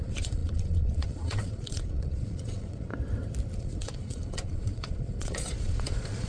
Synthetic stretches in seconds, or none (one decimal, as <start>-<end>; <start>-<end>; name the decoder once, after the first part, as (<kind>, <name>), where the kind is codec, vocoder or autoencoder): 0.0-2.9 (vocoder, Vocos); 3.6-6.3